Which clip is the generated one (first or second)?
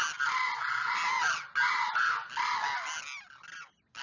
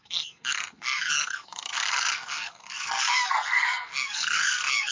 second